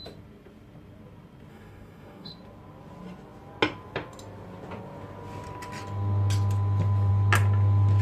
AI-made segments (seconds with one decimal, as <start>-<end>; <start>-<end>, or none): 1.5-2.3